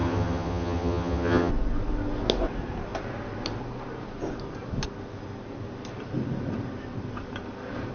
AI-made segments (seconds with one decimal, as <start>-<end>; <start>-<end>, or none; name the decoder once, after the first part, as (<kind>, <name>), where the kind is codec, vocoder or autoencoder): 0.0-1.5 (vocoder, HiFi-GAN)